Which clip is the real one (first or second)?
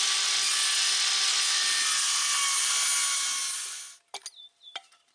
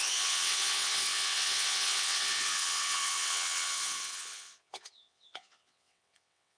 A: first